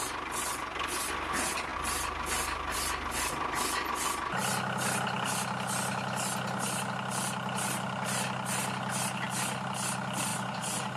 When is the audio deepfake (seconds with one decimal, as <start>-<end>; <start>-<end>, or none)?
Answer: 10.3-11.0